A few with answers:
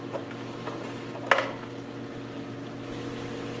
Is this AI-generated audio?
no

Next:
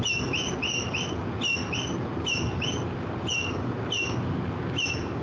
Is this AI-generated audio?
no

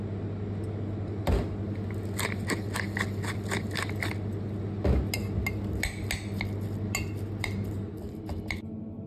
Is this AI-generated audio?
no